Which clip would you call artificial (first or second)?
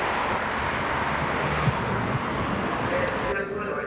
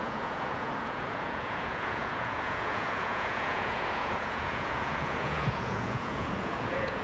second